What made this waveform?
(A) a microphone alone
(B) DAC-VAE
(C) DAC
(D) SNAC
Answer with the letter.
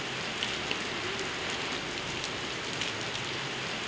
A